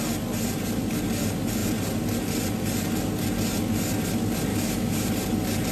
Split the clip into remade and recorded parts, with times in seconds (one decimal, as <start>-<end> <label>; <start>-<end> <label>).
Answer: 0.0-4.5 recorded; 4.5-5.1 remade; 5.1-5.7 recorded